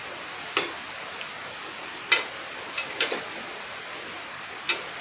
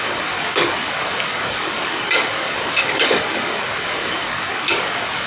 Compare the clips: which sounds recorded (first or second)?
first